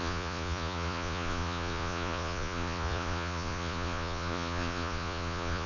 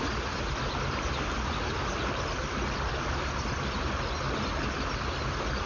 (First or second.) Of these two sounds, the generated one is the first